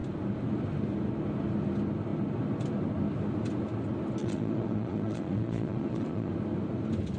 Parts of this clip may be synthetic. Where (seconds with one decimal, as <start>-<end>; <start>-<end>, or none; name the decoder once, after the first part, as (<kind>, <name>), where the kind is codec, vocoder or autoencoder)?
4.2-6.3 (vocoder, Vocos)